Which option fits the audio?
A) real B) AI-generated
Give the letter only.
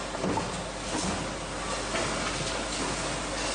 A